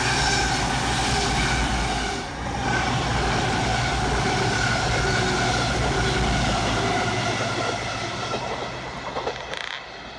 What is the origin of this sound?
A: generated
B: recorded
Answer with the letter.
B